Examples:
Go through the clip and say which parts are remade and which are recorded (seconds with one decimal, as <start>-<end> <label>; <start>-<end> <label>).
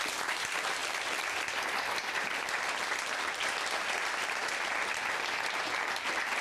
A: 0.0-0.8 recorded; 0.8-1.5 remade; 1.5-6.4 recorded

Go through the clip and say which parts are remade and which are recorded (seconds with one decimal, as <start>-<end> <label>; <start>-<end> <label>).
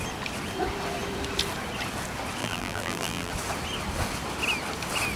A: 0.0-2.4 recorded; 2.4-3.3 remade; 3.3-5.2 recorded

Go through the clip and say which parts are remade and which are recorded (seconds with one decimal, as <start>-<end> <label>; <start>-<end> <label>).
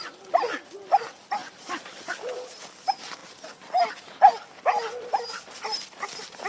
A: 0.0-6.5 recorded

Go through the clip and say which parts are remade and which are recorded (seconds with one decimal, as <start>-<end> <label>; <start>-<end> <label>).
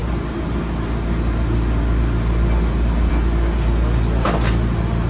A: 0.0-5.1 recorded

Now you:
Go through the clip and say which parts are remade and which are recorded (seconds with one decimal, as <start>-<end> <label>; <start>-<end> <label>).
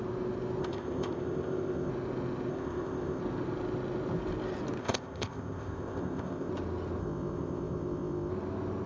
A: 0.0-0.6 recorded; 0.6-1.9 remade; 1.9-2.5 recorded; 2.5-3.2 remade; 3.2-4.8 recorded; 4.8-6.5 remade; 6.5-7.0 recorded; 7.0-8.3 remade; 8.3-8.9 recorded